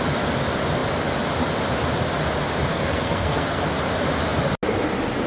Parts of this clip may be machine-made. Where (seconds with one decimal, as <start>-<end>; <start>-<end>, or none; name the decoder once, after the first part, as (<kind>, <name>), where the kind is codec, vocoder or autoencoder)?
2.7-3.6 (codec, SNAC)